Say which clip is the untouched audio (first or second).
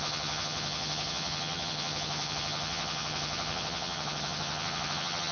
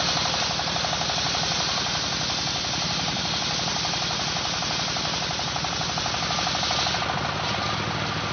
second